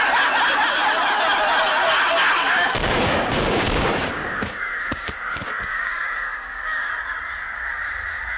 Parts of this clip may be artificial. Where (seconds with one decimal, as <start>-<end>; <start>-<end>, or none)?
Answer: 2.4-6.9